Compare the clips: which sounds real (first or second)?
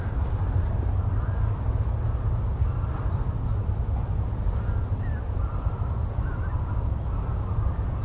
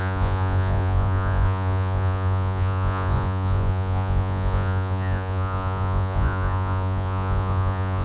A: first